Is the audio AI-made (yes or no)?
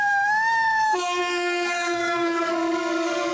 yes